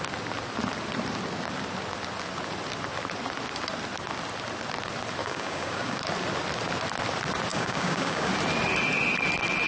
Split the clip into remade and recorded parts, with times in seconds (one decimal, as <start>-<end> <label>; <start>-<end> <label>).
0.0-5.2 recorded; 5.2-6.0 remade; 6.0-7.5 recorded; 7.5-8.3 remade; 8.3-9.7 recorded